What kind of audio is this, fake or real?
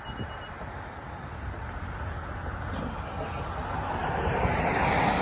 real